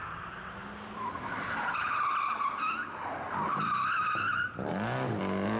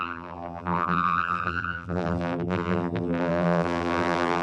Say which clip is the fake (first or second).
second